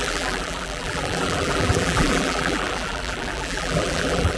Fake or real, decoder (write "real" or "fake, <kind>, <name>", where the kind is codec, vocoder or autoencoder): fake, vocoder, BigVGAN v2